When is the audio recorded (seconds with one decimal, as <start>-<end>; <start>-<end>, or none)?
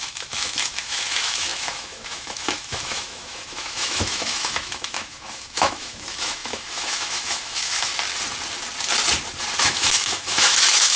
7.9-9.6